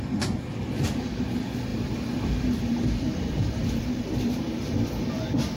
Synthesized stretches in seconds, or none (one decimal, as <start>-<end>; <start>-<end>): 1.7-5.1